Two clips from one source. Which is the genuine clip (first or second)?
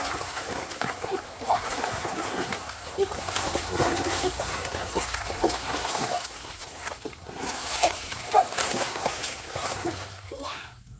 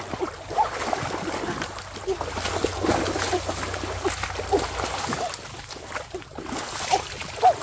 second